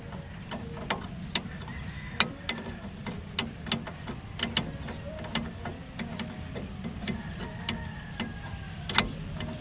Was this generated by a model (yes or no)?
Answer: no